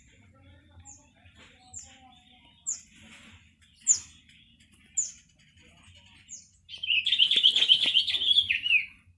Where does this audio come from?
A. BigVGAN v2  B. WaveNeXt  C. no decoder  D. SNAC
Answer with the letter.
C